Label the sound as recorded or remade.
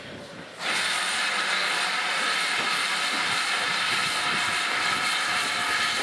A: recorded